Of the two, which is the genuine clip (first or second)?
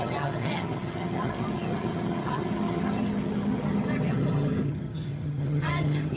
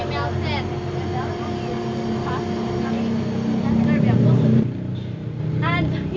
second